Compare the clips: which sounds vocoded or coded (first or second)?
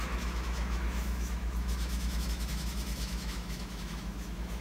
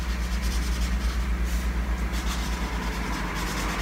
first